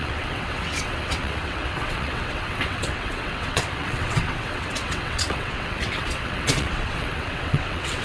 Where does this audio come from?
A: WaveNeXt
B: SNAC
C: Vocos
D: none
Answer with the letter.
A